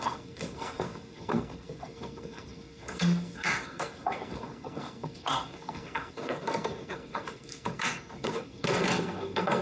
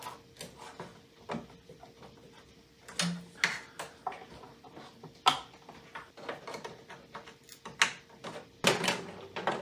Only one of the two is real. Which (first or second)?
second